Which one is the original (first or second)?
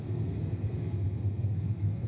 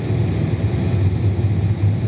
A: second